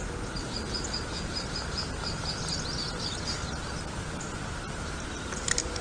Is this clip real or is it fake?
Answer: real